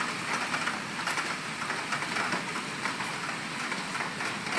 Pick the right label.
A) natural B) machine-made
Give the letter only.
A